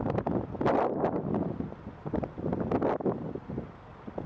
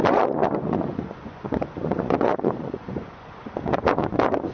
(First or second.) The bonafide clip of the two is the first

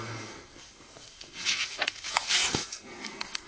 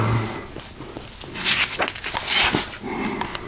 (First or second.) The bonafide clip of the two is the second